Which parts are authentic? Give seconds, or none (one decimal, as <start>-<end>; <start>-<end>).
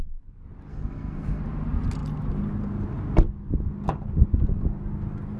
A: 0.0-0.7; 1.4-5.4